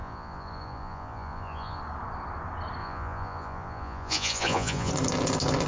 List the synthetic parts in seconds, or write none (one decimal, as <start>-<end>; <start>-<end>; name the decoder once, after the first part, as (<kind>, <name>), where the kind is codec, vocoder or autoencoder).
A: 0.0-1.8 (vocoder, Vocos); 2.8-4.9